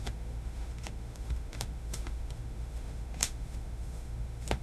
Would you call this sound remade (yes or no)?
yes